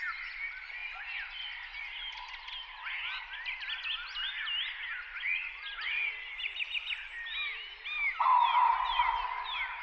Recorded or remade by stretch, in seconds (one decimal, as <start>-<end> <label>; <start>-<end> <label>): 0.0-9.8 recorded